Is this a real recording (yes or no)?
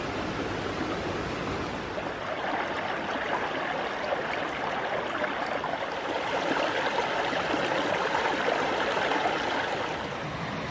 yes